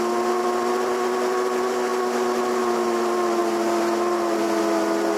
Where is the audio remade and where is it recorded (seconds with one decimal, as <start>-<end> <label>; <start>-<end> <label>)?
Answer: 0.0-5.2 recorded